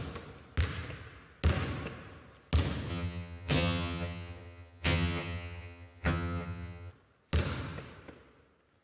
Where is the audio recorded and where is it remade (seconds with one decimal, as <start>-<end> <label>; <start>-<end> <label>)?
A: 0.0-2.9 recorded; 2.9-6.9 remade; 6.9-8.8 recorded